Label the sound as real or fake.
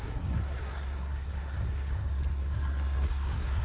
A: fake